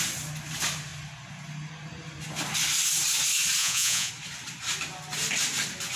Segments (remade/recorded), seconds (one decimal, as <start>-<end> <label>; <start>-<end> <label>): 0.0-3.6 recorded; 3.6-4.1 remade; 4.1-6.0 recorded